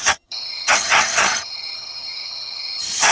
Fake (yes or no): yes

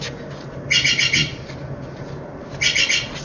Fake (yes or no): no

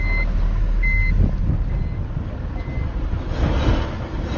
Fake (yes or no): no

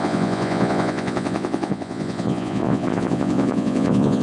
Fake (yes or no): yes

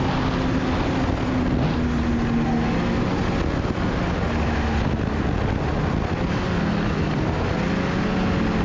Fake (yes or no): no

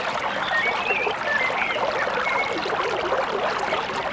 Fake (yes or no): no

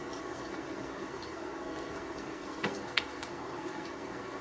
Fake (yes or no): yes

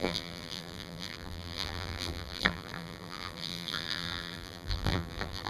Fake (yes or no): yes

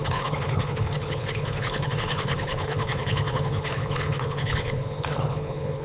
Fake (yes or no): yes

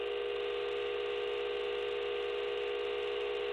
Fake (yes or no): no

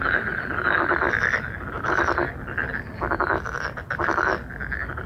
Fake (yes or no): no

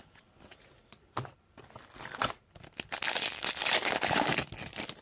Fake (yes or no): no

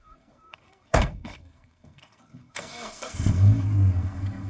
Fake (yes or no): yes